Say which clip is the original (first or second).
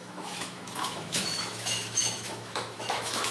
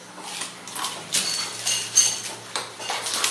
second